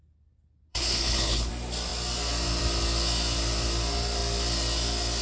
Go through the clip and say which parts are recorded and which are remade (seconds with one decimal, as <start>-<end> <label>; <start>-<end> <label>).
0.0-0.7 recorded; 0.7-1.5 remade; 1.5-5.2 recorded